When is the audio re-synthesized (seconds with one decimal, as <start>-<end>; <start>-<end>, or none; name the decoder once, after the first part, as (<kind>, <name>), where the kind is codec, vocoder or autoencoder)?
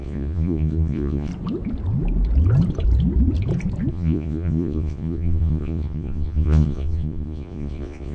0.0-1.3 (vocoder, Vocos); 3.9-8.1